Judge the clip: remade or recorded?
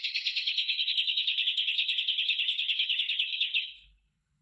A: remade